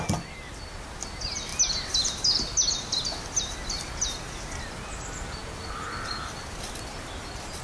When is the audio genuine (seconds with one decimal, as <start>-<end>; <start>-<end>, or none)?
0.0-7.6